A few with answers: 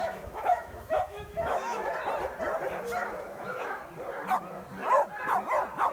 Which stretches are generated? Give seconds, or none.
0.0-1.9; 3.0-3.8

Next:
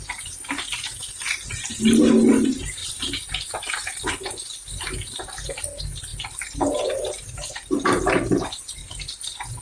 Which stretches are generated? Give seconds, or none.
none

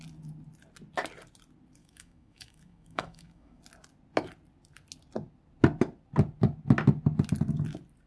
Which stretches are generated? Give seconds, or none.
1.8-3.6